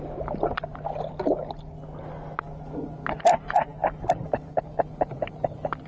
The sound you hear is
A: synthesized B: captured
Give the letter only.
B